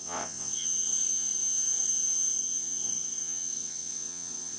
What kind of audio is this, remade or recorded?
remade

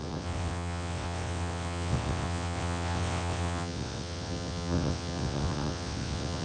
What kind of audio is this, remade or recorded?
remade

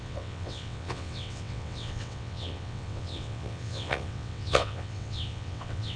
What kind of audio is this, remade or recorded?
remade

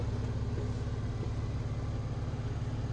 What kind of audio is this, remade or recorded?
recorded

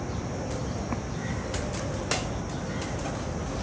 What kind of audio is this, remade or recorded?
recorded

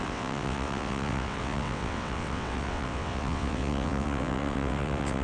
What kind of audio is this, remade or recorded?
remade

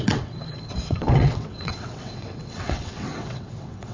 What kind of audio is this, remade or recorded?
remade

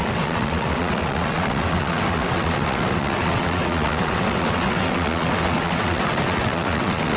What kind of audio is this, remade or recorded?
remade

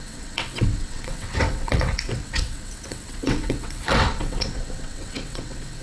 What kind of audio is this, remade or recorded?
remade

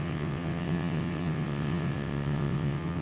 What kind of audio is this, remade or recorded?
remade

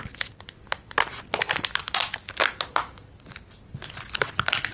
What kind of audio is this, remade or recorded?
recorded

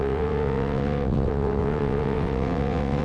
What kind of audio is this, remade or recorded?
remade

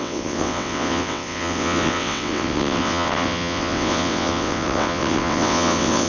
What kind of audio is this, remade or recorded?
remade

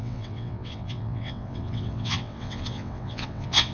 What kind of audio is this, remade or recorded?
remade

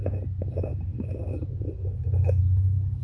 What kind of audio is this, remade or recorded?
recorded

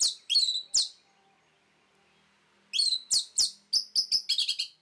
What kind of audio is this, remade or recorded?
recorded